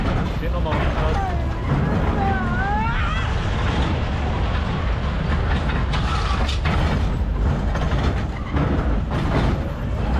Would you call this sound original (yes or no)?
yes